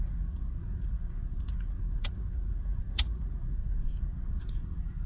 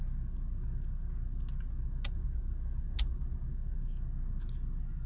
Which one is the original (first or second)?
second